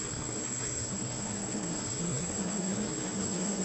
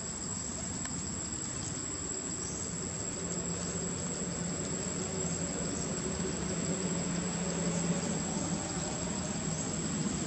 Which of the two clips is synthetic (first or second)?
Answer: first